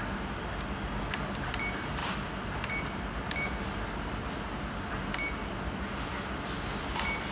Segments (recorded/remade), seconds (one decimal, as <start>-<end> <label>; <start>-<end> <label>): 0.0-7.3 recorded